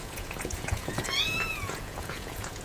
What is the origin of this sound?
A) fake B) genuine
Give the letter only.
A